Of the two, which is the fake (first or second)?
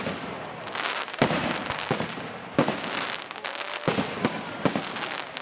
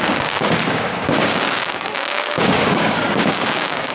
second